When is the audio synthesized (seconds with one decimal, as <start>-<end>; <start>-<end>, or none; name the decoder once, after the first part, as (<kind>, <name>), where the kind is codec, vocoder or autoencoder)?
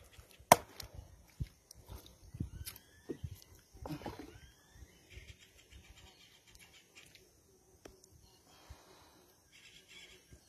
none